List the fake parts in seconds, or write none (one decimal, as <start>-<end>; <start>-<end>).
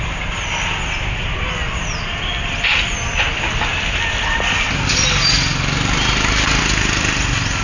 none